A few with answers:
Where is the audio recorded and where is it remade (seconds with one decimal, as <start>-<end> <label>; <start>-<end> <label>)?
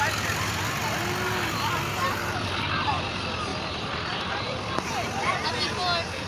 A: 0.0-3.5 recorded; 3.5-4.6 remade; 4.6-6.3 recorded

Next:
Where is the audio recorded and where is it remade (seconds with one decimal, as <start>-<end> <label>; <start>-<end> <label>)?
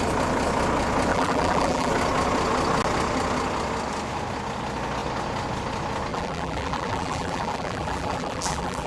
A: 0.0-1.1 recorded; 1.1-1.9 remade; 1.9-6.1 recorded; 6.1-8.9 remade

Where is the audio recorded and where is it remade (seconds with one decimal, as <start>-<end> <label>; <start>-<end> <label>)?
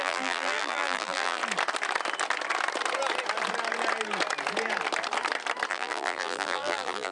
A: 0.0-1.4 remade; 1.4-5.7 recorded; 5.7-7.1 remade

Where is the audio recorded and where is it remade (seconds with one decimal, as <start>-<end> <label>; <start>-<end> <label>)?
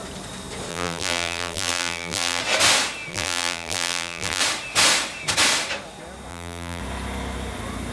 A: 0.0-0.7 recorded; 0.7-2.4 remade; 2.4-3.1 recorded; 3.1-4.4 remade; 4.4-6.3 recorded; 6.3-6.8 remade; 6.8-7.9 recorded